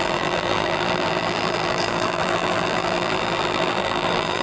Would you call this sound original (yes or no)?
no